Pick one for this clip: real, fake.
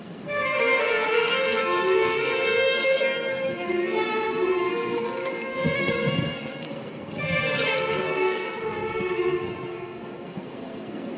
fake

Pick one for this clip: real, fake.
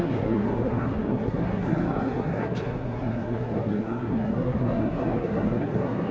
fake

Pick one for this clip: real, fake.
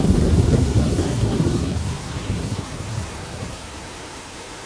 fake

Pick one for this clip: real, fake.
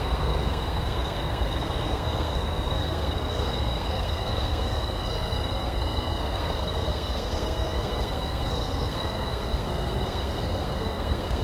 fake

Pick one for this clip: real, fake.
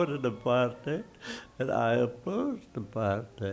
real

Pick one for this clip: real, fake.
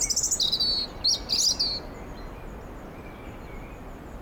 real